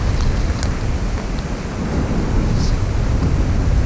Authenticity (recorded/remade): recorded